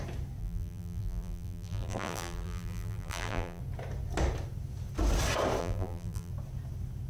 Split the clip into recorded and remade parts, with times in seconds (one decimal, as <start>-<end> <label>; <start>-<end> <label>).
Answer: 0.0-0.4 recorded; 0.4-3.6 remade; 3.6-5.6 recorded; 5.6-6.3 remade; 6.3-7.1 recorded